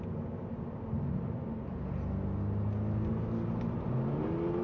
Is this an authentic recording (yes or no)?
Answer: yes